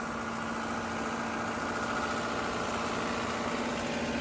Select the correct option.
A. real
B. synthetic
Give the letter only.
A